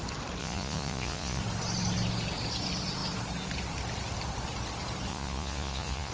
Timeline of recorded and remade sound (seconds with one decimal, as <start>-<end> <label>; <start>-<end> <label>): 0.0-0.4 recorded; 0.4-1.4 remade; 1.4-5.1 recorded; 5.1-6.1 remade